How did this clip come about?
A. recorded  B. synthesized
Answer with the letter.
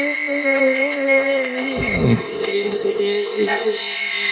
B